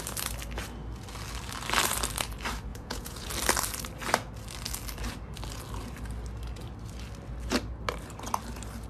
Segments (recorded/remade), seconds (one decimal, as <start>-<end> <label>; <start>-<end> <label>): 0.0-2.7 recorded; 2.7-3.3 remade; 3.3-8.9 recorded